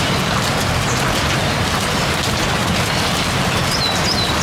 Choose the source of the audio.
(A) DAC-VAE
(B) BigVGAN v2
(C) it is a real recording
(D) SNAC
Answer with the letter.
C